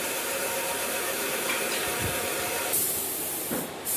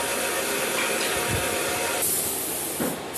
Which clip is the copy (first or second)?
first